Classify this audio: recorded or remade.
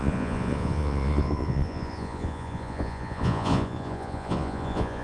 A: remade